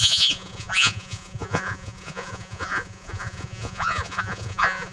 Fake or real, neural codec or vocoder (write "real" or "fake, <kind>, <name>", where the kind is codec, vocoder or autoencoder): fake, vocoder, Vocos